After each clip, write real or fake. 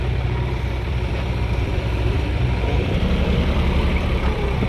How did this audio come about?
fake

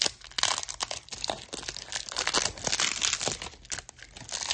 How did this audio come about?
real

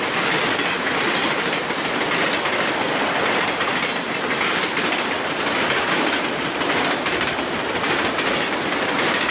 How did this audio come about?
real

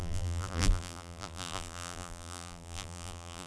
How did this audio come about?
fake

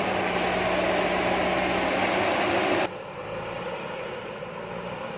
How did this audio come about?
real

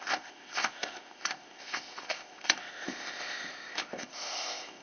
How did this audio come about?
fake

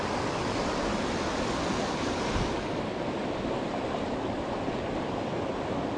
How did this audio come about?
real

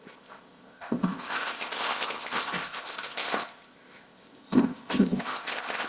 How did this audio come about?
fake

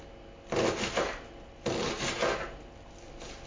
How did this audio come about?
real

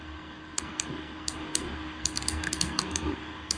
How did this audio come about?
fake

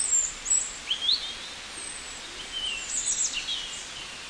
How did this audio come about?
real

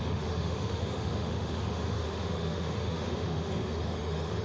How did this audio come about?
fake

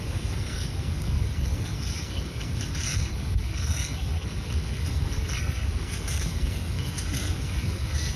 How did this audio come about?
fake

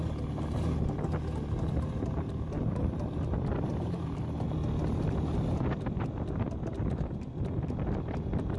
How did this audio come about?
real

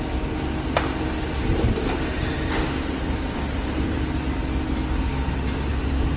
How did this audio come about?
real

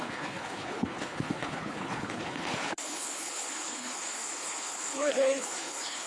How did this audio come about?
fake